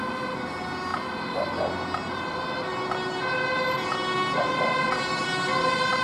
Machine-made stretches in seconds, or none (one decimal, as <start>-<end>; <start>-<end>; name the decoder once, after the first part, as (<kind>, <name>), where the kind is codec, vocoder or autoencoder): none